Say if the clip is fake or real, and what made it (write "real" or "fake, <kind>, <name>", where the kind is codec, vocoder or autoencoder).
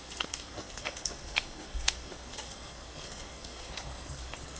fake, codec, SNAC